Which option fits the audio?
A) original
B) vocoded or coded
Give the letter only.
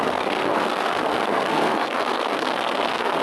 B